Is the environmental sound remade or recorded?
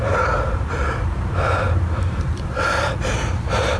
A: remade